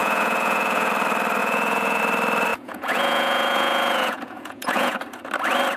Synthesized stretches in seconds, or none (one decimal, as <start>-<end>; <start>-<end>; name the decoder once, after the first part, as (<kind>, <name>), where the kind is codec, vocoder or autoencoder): 0.0-0.9 (vocoder, Vocos); 1.4-2.0; 2.5-5.0